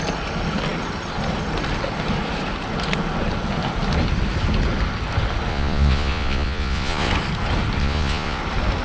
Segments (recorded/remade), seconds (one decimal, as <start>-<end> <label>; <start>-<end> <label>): 0.0-5.5 recorded; 5.5-7.1 remade; 7.1-7.8 recorded; 7.8-8.4 remade; 8.4-8.8 recorded